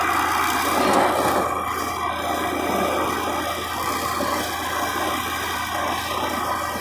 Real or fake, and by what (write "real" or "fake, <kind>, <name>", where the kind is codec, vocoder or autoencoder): real